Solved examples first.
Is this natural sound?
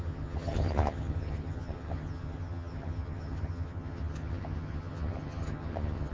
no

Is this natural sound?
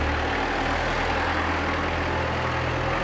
yes